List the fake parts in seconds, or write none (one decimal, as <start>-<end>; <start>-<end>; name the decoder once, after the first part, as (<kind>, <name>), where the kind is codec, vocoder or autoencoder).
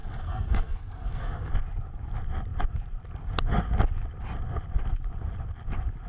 0.0-1.5 (codec, SNAC)